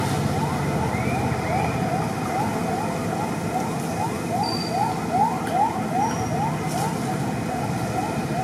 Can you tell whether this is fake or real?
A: real